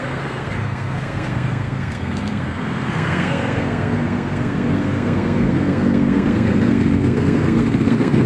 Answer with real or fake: fake